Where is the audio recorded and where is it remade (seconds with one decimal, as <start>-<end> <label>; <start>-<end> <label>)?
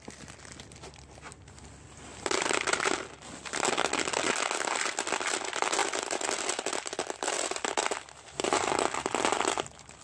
0.0-2.1 recorded; 2.1-2.8 remade; 2.8-5.8 recorded; 5.8-10.0 remade